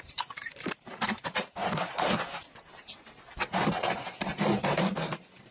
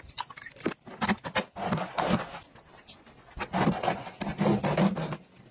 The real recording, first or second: second